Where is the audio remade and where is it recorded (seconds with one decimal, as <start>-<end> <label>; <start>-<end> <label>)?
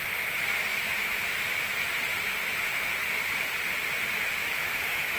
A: 0.0-0.7 recorded; 0.7-1.2 remade; 1.2-2.1 recorded; 2.1-2.9 remade; 2.9-4.4 recorded; 4.4-5.2 remade